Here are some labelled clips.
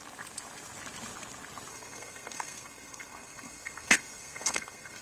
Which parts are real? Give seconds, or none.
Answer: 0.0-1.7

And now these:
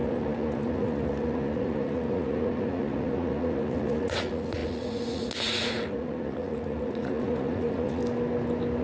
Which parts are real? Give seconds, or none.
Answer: 8.0-8.8

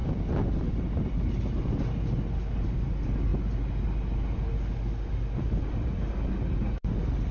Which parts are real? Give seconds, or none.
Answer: 0.0-7.3

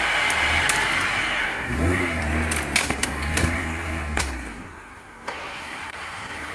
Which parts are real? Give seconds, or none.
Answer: 0.0-1.4; 2.2-2.8

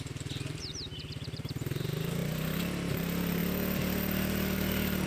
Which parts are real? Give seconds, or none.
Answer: none